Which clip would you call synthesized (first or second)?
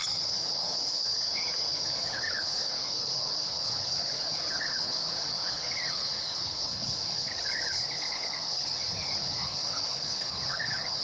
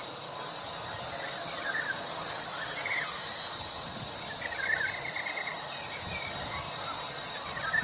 first